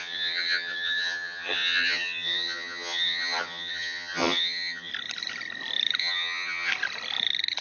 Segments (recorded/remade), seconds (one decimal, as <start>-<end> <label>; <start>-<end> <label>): 0.0-4.9 remade; 4.9-6.0 recorded; 6.0-6.7 remade; 6.7-7.6 recorded